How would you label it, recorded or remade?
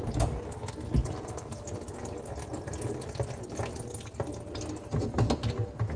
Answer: recorded